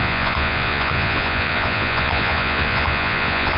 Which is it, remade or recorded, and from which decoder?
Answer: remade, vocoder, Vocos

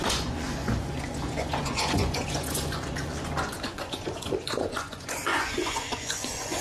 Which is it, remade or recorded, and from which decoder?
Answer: remade, vocoder, Vocos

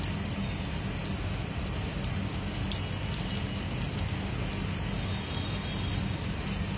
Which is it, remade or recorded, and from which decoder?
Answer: recorded